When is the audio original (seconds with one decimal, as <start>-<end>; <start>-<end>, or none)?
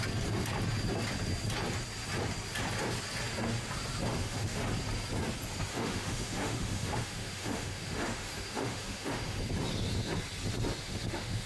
0.0-4.1; 4.7-5.7; 9.4-10.8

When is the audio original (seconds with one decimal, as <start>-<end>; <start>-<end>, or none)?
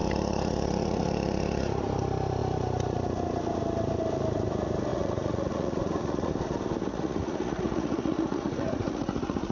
1.8-4.9; 6.3-6.9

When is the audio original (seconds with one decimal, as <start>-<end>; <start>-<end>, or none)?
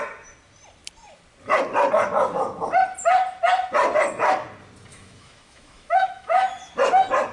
0.0-4.9; 6.7-7.3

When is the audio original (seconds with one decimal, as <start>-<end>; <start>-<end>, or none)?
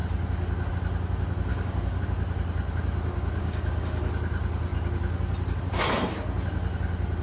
0.0-1.5; 2.0-3.4; 4.0-7.2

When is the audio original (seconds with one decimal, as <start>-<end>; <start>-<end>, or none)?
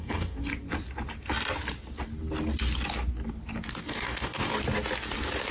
0.5-3.8; 4.5-5.5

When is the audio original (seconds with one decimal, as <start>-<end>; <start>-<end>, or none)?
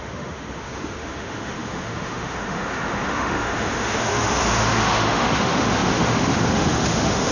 none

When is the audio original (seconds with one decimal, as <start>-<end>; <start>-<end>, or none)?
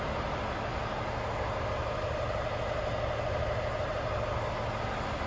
0.0-5.3